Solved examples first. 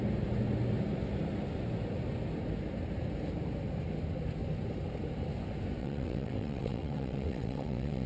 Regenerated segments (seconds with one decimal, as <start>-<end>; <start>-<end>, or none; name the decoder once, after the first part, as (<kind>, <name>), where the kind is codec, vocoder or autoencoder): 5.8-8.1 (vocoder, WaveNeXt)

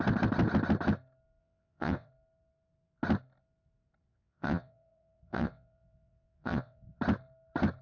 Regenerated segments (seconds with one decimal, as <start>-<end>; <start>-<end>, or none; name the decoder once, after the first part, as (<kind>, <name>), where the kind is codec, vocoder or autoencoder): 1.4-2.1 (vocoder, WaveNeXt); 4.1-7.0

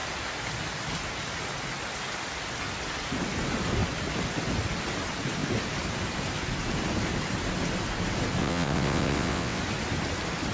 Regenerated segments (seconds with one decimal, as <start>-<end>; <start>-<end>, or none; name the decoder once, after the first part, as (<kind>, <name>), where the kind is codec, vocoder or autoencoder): 8.4-9.6 (vocoder, WaveNeXt)